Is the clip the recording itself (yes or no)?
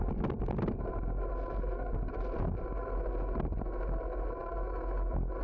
yes